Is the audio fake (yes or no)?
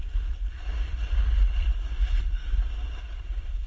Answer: no